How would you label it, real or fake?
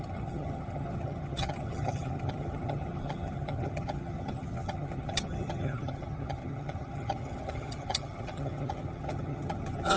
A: fake